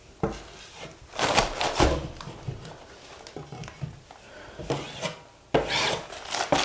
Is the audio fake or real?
real